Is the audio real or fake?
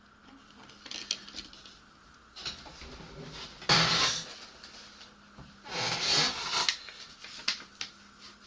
real